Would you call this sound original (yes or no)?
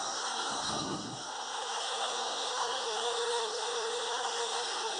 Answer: no